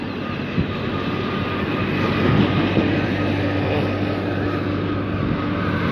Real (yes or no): yes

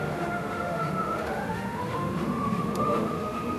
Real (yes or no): no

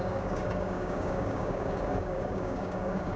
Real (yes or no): no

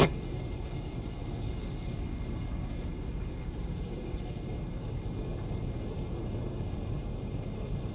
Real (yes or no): no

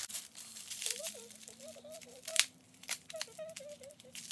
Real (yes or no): no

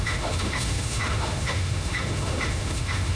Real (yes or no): no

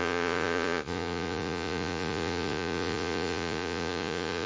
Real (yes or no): no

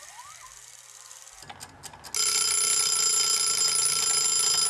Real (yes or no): yes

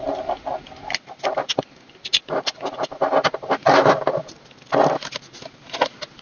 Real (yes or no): yes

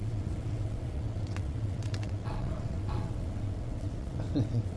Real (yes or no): no